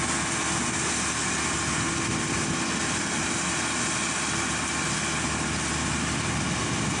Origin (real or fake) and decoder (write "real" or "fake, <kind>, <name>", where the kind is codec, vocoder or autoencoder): real